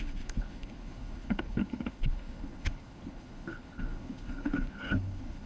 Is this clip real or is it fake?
fake